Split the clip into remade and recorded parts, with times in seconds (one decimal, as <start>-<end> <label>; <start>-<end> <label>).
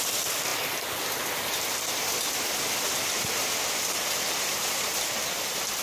0.0-5.8 recorded